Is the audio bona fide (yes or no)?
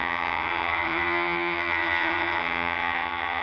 no